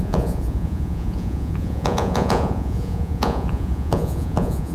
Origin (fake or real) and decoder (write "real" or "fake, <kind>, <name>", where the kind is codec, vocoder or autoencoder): fake, vocoder, Vocos